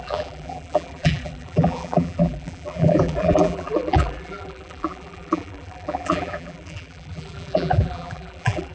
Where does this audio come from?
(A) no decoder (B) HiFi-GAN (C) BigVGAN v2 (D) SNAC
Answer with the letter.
C